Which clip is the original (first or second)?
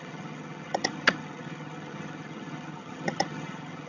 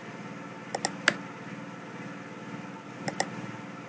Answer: second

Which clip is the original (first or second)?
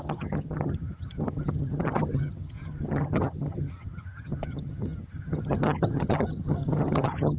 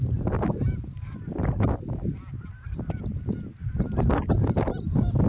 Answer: second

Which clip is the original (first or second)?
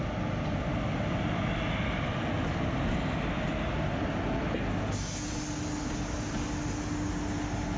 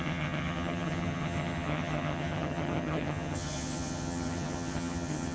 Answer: first